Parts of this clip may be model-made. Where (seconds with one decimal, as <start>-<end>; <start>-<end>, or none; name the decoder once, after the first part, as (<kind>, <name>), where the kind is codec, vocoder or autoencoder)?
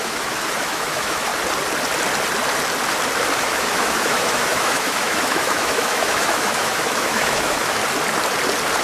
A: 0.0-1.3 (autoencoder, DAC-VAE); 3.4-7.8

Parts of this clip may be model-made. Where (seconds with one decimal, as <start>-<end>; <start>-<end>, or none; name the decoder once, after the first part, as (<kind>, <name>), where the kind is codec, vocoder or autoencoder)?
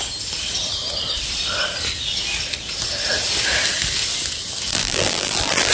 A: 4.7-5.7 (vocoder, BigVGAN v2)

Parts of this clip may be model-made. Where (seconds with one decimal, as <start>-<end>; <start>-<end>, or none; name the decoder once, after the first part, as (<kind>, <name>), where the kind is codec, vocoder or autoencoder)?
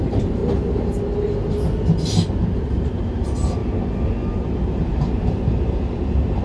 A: 0.0-0.4 (vocoder, BigVGAN v2); 2.0-3.6; 4.3-6.4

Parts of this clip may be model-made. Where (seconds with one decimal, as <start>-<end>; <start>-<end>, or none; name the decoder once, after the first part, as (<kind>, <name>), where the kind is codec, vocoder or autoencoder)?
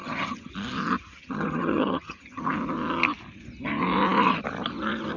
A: 0.0-0.5 (vocoder, HiFi-GAN); 1.1-2.5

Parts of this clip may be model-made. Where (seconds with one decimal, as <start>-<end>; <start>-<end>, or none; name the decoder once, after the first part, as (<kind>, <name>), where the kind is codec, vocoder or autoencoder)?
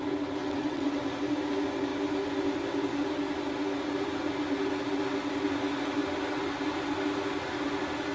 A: 0.4-1.0 (vocoder, WaveNeXt)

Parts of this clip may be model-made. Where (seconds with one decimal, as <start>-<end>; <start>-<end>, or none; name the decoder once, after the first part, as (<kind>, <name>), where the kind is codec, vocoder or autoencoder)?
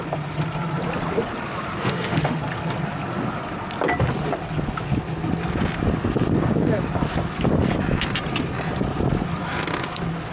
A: 1.8-2.4 (autoencoder, DAC-VAE)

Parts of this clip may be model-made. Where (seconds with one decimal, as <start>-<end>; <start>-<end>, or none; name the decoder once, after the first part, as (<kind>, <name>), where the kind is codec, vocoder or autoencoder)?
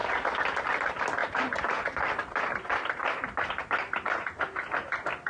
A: 1.2-4.4 (vocoder, BigVGAN v2)